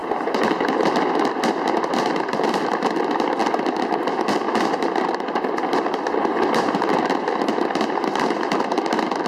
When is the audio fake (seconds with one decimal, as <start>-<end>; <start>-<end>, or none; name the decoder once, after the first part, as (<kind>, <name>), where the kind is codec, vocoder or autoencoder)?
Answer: 1.2-3.4 (vocoder, BigVGAN v2); 5.8-9.3